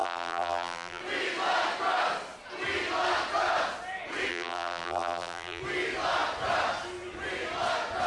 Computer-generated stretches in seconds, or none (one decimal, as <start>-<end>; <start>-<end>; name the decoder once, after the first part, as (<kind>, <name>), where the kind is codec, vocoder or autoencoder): 0.0-1.0 (vocoder, BigVGAN v2); 4.3-5.6